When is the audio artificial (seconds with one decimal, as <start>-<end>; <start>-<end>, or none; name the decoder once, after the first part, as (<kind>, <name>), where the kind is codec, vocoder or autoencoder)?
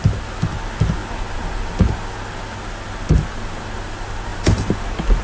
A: none